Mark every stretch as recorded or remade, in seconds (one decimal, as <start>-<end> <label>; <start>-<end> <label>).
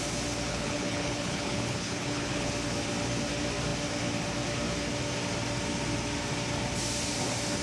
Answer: 0.0-0.5 recorded; 0.5-2.5 remade; 2.5-7.6 recorded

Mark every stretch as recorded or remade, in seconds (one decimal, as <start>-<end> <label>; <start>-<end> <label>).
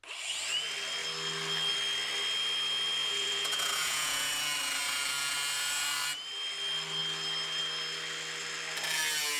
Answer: 0.0-3.0 recorded; 3.0-4.3 remade; 4.3-9.4 recorded